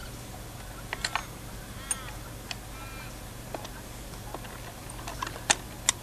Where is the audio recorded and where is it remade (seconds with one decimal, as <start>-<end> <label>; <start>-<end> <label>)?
0.0-6.0 recorded